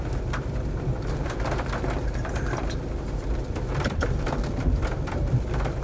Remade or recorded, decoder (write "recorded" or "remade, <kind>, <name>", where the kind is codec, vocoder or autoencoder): remade, vocoder, BigVGAN v2